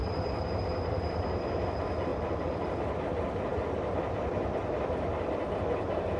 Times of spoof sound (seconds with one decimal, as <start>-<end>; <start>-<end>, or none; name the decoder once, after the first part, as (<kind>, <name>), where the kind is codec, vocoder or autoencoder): 0.0-1.6 (vocoder, BigVGAN v2); 2.1-3.0